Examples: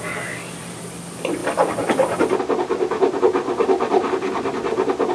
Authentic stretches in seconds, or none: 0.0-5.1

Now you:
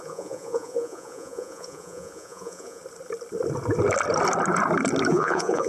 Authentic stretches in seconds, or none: 2.8-5.1

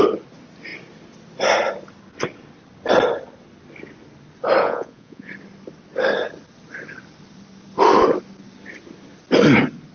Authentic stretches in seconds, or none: 0.0-4.6; 5.3-9.9

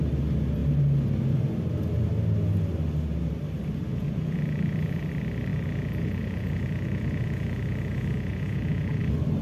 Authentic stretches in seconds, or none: 0.0-3.9; 5.1-5.5; 9.0-9.4

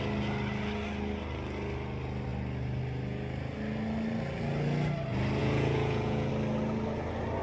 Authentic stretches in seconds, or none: 0.0-5.4; 6.3-7.4

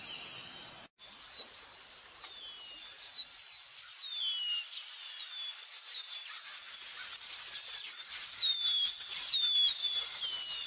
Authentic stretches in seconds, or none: 0.0-10.7

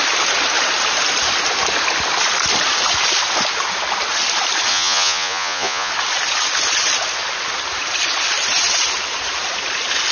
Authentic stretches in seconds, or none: 0.0-4.7; 5.9-10.1

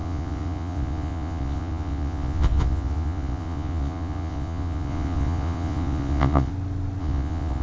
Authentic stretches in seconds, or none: 6.5-7.0